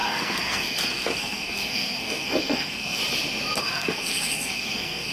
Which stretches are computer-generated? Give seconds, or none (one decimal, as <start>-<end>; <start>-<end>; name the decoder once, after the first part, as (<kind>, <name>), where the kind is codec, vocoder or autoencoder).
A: 0.0-3.0 (codec, SNAC); 3.6-5.1